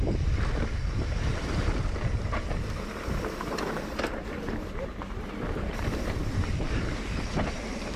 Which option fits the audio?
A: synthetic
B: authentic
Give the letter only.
A